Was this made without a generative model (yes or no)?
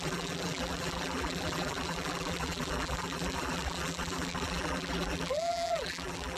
no